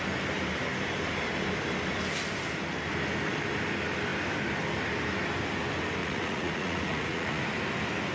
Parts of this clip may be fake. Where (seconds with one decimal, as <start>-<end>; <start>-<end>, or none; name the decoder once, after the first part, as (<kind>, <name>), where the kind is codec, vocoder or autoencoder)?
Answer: 6.0-7.4 (vocoder, Vocos)